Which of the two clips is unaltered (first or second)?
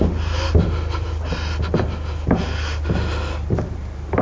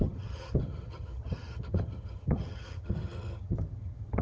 first